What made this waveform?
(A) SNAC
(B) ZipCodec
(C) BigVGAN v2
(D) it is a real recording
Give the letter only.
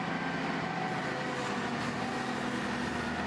D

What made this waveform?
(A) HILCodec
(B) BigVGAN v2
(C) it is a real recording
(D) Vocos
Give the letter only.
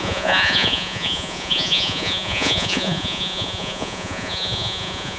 D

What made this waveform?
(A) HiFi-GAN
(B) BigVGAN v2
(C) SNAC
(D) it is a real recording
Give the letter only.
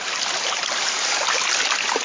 D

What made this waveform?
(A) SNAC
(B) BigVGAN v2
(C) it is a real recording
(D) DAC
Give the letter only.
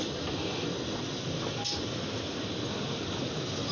C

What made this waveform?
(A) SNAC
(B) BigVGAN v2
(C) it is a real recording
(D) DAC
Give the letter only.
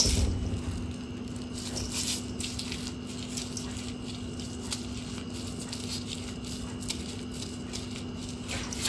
C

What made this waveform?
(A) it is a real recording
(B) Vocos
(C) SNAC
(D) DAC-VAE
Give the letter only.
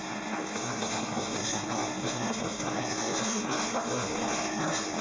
C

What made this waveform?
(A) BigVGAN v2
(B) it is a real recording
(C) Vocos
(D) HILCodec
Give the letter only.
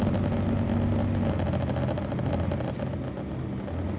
B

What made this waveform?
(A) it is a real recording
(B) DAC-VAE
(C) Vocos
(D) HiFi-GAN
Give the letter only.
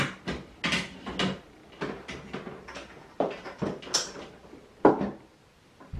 A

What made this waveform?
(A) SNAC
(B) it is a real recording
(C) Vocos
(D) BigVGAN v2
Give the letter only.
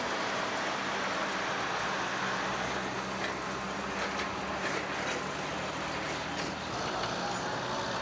B